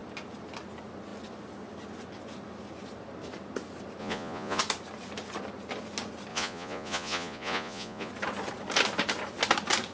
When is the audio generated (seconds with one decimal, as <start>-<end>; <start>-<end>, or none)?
4.0-4.6; 6.3-8.1